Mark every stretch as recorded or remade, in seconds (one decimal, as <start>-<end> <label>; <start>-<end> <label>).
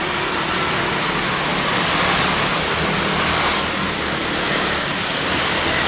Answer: 0.0-5.9 recorded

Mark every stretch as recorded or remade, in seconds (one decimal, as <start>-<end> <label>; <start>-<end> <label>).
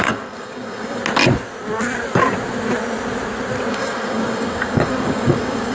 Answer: 0.0-1.0 remade; 1.0-3.7 recorded; 3.7-5.7 remade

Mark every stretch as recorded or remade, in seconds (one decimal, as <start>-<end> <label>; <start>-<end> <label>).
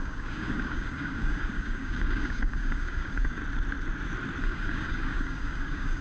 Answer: 0.0-3.4 remade; 3.4-4.4 recorded; 4.4-6.0 remade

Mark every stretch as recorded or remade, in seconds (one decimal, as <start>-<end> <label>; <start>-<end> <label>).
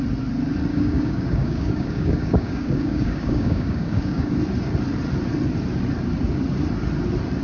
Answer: 0.0-0.7 recorded; 0.7-4.4 remade; 4.4-7.4 recorded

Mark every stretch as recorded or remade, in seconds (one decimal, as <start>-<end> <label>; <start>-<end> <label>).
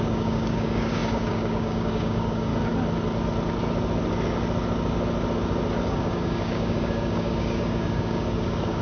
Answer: 0.0-2.5 remade; 2.5-5.9 recorded; 5.9-8.8 remade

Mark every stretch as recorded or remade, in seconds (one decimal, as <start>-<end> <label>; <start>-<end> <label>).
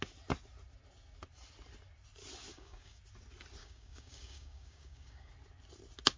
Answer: 0.0-2.5 recorded; 2.5-3.0 remade; 3.0-3.6 recorded; 3.6-5.3 remade; 5.3-6.2 recorded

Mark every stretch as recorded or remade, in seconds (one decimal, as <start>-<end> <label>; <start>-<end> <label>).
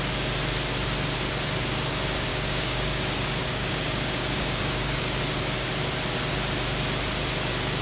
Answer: 0.0-2.3 recorded; 2.3-3.0 remade; 3.0-3.4 recorded; 3.4-5.2 remade; 5.2-7.8 recorded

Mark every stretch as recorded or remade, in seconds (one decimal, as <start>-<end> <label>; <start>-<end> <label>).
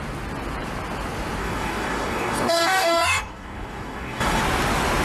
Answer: 0.0-1.4 recorded; 1.4-4.4 remade; 4.4-5.0 recorded